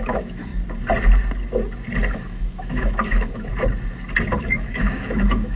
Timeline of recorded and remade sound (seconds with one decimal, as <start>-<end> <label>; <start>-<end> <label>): 0.0-0.5 remade; 0.5-2.1 recorded; 2.1-3.5 remade; 3.5-4.4 recorded; 4.4-5.6 remade

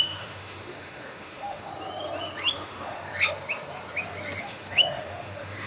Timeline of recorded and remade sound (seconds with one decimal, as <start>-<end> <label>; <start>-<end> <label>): 0.0-1.7 remade; 1.7-2.5 recorded; 2.5-3.1 remade; 3.1-4.4 recorded; 4.4-5.7 remade

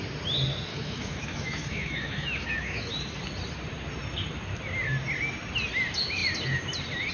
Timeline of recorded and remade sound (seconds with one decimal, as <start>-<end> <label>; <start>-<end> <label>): 0.0-0.7 recorded; 0.7-2.9 remade; 2.9-7.1 recorded

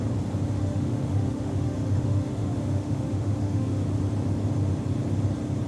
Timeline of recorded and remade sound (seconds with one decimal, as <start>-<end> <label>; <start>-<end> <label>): 0.0-0.6 recorded; 0.6-4.0 remade; 4.0-5.7 recorded

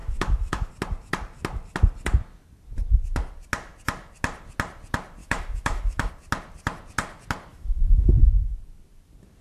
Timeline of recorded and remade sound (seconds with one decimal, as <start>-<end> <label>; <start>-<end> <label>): 0.0-0.7 remade; 0.7-5.2 recorded; 5.2-6.1 remade; 6.1-7.5 recorded; 7.5-8.1 remade; 8.1-9.4 recorded

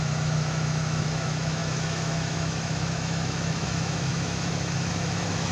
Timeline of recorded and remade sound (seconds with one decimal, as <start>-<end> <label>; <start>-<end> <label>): 0.0-5.5 remade

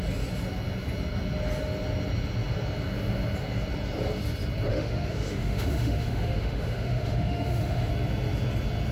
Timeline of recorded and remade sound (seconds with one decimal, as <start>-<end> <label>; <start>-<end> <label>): 0.0-4.7 recorded; 4.7-7.9 remade; 7.9-8.9 recorded

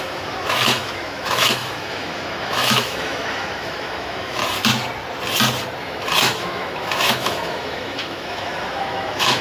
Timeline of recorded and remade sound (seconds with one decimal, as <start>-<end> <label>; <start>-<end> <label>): 0.0-4.4 remade; 4.4-5.8 recorded; 5.8-9.4 remade